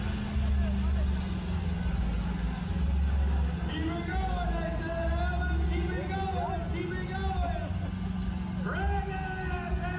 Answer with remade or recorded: recorded